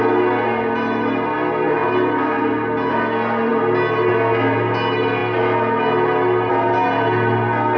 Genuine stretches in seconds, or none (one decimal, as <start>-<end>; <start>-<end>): 0.0-7.8